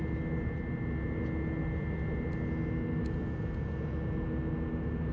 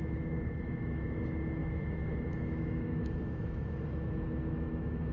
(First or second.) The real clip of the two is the first